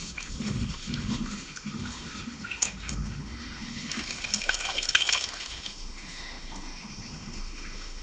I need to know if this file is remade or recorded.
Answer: remade